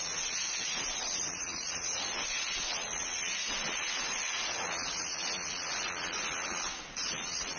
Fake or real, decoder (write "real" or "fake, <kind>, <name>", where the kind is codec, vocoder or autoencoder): fake, vocoder, Vocos